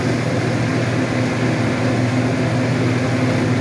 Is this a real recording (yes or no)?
yes